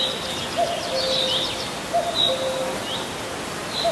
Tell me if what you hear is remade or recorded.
recorded